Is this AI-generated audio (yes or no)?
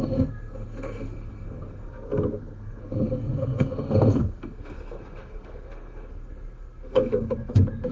yes